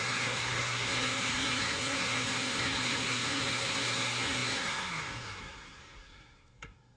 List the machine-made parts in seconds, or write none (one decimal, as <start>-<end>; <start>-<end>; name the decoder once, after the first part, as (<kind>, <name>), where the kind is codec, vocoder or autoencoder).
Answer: 0.0-7.0 (codec, SNAC)